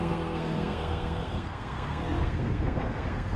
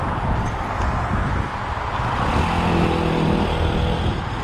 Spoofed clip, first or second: first